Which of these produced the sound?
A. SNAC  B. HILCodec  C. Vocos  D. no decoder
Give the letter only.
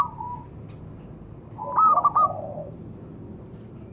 D